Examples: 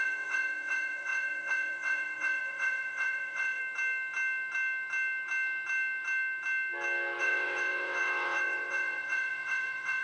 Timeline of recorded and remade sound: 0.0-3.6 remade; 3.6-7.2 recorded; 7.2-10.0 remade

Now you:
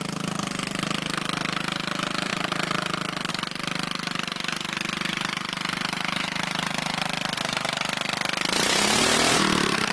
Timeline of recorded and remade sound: 0.0-9.9 recorded